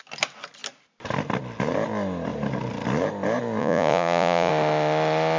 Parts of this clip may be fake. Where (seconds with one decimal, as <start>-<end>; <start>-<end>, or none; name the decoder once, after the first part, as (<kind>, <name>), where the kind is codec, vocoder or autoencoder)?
3.6-4.5 (vocoder, Vocos)